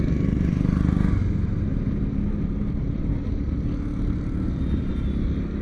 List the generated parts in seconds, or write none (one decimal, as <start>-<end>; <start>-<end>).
none